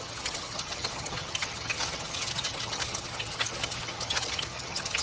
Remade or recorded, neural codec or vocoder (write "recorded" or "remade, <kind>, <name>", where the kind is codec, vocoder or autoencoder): remade, vocoder, HiFi-GAN